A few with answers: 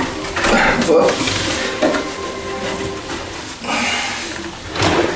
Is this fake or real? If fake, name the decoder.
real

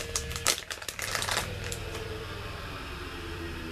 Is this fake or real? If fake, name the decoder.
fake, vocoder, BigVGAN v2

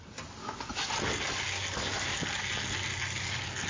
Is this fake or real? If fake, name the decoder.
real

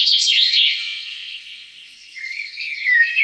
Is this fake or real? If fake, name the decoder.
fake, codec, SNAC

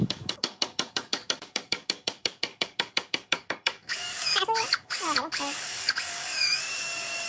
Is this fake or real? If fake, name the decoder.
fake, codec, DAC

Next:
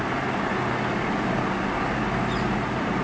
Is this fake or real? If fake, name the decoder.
real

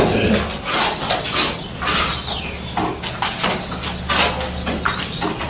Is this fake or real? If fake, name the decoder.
real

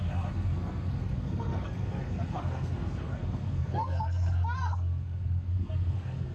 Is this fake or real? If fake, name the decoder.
fake, codec, SNAC